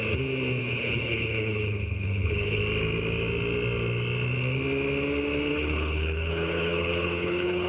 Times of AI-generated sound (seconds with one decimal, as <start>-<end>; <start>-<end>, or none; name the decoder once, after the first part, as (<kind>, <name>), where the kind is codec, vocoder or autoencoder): 0.6-2.6 (codec, HILCodec); 5.5-7.7